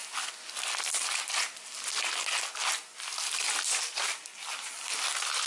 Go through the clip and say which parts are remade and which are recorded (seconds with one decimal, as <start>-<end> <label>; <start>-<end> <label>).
0.0-5.5 recorded